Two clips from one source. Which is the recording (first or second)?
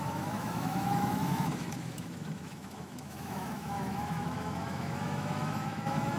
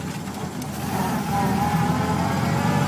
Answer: second